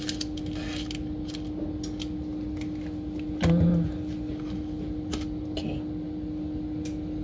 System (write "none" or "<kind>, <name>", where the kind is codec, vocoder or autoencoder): none